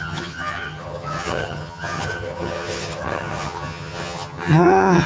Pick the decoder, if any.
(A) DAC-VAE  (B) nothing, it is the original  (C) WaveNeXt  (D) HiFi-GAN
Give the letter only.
D